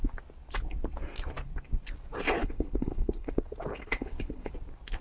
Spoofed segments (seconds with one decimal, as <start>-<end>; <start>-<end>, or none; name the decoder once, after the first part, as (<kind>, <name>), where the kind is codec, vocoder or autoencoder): 2.4-3.3 (codec, HILCodec); 3.7-4.5